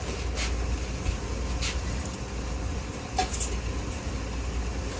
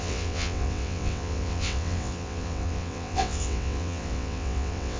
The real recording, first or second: first